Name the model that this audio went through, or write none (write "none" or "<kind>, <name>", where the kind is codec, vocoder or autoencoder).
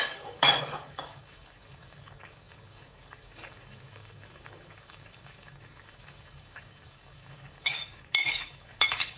codec, DAC